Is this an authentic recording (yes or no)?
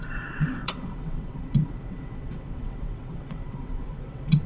no